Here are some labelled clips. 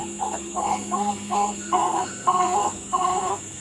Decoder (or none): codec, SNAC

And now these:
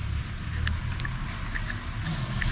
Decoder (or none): none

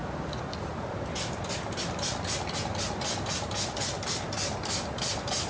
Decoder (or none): none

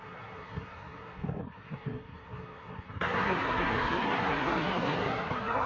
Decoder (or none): codec, SNAC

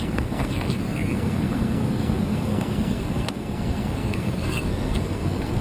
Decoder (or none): codec, SNAC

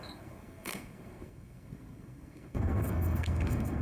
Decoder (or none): codec, SNAC